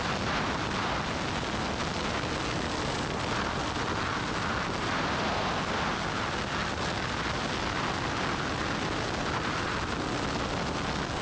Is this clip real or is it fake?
real